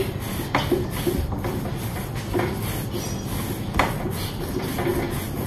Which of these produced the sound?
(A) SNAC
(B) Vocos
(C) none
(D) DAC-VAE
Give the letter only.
C